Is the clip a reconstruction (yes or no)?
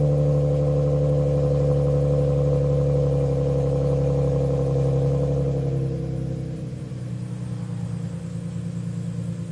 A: no